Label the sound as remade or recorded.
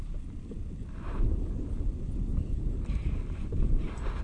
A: recorded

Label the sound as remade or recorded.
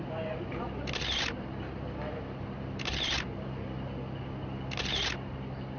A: recorded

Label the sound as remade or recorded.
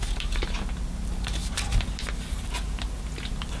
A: recorded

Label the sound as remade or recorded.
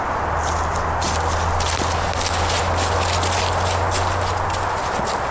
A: recorded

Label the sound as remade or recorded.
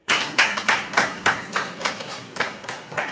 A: remade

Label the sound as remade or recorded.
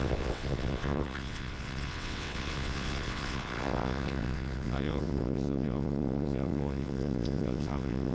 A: remade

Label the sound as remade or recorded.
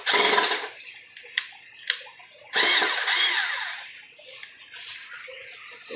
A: recorded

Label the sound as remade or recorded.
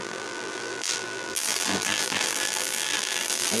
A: remade